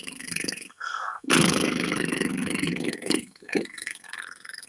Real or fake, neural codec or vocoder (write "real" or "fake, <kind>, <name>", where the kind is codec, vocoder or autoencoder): fake, codec, SNAC